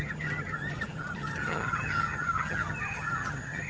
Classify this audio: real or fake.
fake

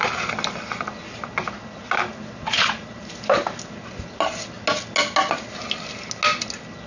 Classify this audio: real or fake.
real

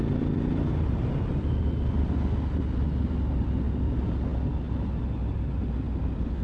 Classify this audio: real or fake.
real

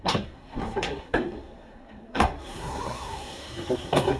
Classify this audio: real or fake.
fake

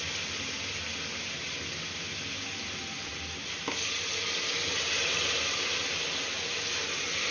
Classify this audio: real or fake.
real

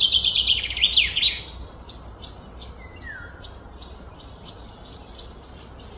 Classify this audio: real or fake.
real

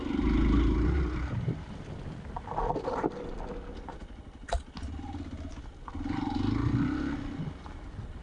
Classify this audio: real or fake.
real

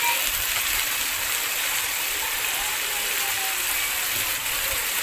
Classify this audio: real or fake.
real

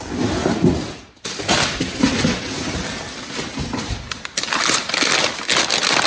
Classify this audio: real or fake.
real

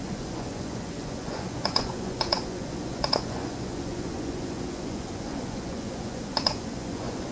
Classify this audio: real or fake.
fake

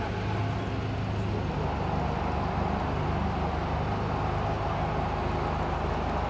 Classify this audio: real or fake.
real